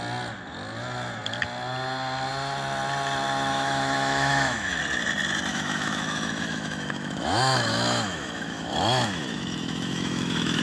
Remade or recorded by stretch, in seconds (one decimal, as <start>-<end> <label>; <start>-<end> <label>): 0.0-3.5 recorded; 3.5-4.8 remade; 4.8-5.5 recorded; 5.5-10.6 remade